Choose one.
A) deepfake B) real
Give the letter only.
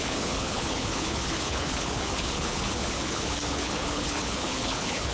A